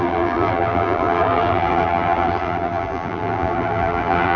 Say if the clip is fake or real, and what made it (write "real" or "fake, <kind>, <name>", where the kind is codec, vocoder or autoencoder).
fake, vocoder, BigVGAN v2